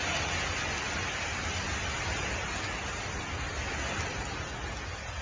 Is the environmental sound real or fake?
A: real